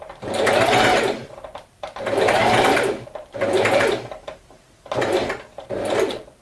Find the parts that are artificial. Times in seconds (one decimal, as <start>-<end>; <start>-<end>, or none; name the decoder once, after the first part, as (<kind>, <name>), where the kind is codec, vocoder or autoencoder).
1.2-4.3 (vocoder, BigVGAN v2)

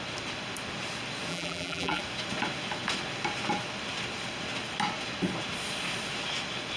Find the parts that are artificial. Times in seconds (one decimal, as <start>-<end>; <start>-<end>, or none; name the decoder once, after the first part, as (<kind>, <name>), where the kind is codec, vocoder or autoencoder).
1.3-2.0 (vocoder, BigVGAN v2)